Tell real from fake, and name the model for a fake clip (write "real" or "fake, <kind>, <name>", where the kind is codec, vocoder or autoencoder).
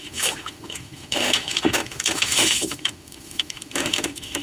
fake, autoencoder, DAC-VAE